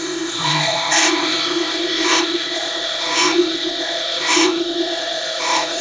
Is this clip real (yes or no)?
no